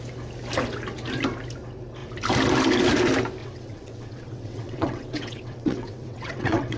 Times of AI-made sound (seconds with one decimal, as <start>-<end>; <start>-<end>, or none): 3.4-6.8